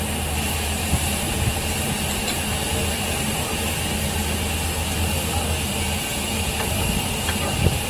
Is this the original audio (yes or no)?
yes